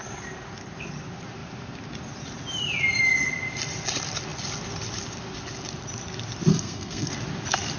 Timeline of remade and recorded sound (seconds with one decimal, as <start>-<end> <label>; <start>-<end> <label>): 0.0-6.5 recorded; 6.5-7.1 remade; 7.1-7.8 recorded